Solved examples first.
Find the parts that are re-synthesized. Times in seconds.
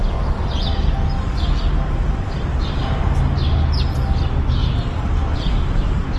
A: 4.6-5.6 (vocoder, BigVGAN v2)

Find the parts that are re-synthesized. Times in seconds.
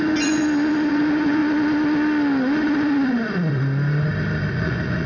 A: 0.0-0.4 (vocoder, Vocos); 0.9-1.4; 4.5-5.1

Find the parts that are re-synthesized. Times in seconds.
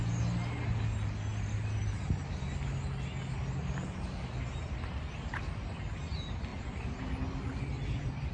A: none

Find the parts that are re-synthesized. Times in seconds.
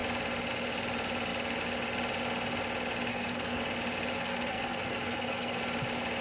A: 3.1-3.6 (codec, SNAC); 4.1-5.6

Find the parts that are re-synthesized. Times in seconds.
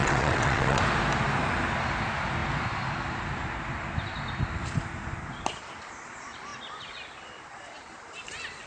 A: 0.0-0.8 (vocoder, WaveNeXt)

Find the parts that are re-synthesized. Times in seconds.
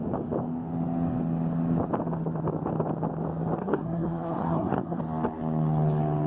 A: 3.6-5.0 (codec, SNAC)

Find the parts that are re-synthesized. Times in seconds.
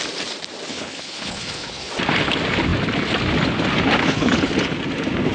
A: 0.7-1.9 (codec, HILCodec); 4.0-4.5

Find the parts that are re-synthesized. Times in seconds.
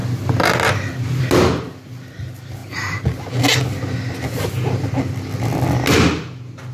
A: none